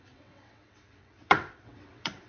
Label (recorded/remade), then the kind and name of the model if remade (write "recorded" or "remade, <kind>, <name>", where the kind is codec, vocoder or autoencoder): remade, vocoder, WaveNeXt